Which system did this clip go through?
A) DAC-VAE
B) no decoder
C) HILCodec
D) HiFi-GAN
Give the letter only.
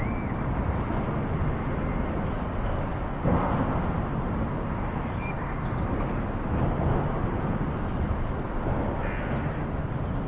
B